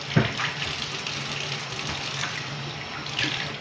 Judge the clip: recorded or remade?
recorded